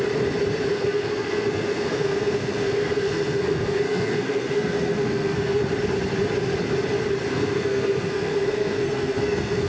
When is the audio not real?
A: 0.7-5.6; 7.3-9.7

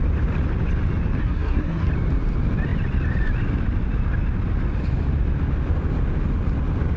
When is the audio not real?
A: 1.2-1.9

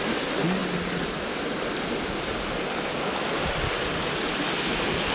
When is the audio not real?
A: none

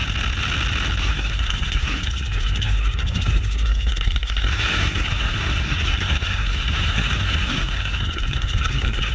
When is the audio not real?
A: 1.0-9.1